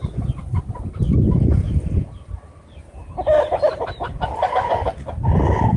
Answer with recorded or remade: recorded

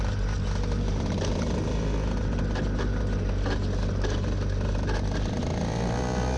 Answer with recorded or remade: recorded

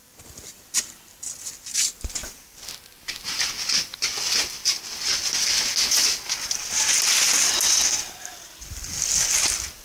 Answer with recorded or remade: recorded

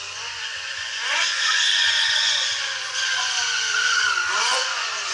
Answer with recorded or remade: remade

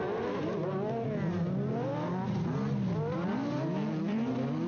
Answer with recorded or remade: recorded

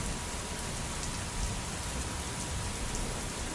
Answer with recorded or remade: recorded